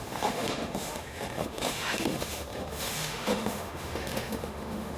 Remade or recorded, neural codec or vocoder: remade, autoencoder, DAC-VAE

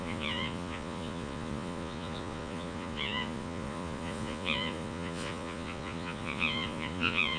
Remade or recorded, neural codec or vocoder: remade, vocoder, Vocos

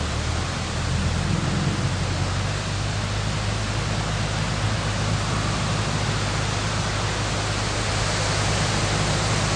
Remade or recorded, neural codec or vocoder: recorded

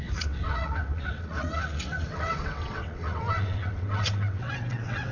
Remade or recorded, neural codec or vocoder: remade, vocoder, WaveNeXt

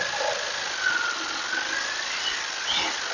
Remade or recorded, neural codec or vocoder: recorded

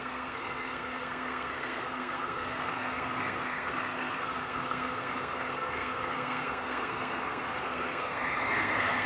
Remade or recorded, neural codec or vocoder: remade, codec, SNAC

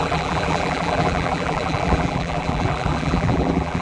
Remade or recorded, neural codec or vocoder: remade, vocoder, BigVGAN v2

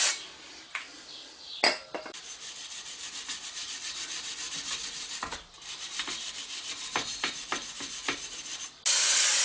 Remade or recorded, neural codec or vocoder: recorded